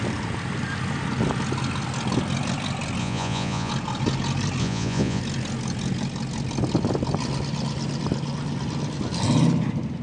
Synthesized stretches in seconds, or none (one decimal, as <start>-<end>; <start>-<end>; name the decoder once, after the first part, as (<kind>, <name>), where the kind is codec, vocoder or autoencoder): 3.0-3.7 (vocoder, Vocos); 4.6-5.2